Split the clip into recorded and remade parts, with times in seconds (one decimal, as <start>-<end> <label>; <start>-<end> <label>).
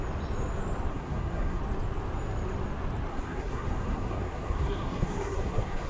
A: 0.0-0.9 recorded; 0.9-1.6 remade; 1.6-3.1 recorded; 3.1-5.9 remade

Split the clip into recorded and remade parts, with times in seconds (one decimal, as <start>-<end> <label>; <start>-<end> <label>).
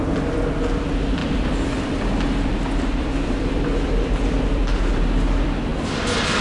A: 0.0-1.2 recorded; 1.2-5.0 remade; 5.0-6.4 recorded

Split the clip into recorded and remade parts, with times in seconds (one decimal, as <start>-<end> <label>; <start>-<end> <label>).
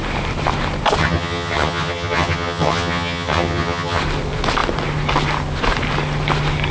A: 0.0-1.0 recorded; 1.0-4.0 remade; 4.0-6.7 recorded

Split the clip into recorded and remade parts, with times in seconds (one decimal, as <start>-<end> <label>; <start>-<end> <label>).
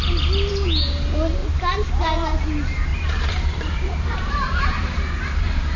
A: 0.0-1.4 recorded; 1.4-1.9 remade; 1.9-2.9 recorded; 2.9-5.8 remade